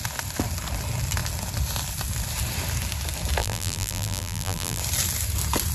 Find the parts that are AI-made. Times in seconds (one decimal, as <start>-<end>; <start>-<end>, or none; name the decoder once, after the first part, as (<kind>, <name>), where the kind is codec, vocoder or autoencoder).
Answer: 3.4-4.8 (vocoder, BigVGAN v2)